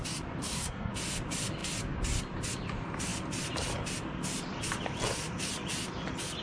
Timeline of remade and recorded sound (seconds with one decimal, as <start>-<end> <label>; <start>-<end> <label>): 0.0-0.4 recorded; 0.4-0.9 remade; 0.9-6.4 recorded